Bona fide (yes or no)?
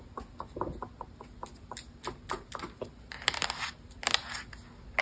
yes